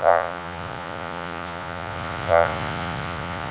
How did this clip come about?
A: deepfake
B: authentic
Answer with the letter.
A